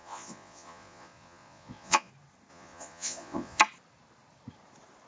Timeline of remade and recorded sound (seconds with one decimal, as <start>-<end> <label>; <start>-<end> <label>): 0.0-2.1 remade; 2.1-2.5 recorded; 2.5-3.6 remade; 3.6-5.1 recorded